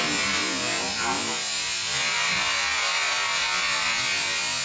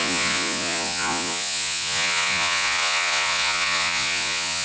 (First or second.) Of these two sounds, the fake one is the second